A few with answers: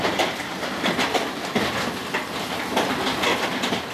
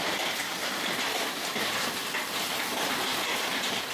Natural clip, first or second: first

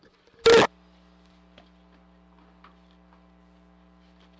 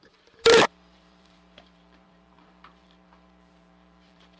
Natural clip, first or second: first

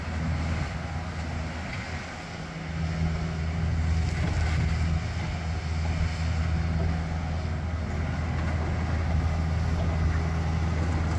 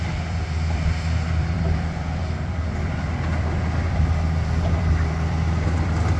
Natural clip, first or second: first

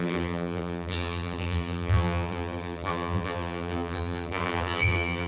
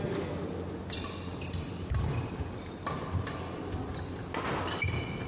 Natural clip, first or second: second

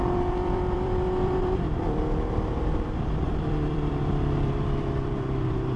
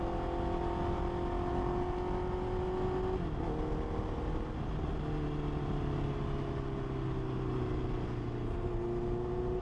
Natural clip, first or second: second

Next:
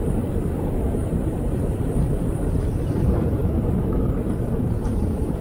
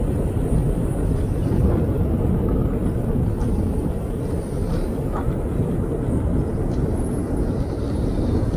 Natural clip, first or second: second